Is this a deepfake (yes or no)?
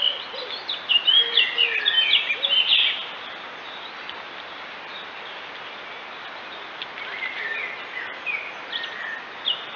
no